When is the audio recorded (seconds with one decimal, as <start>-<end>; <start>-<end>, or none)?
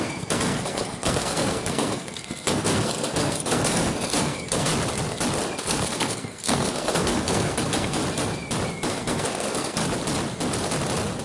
4.7-5.6; 8.0-8.9; 9.8-11.2